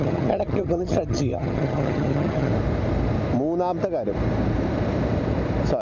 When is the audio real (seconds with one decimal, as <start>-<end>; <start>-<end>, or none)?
2.5-5.8